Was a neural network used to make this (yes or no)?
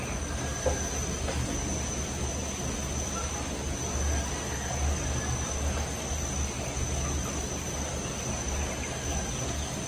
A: no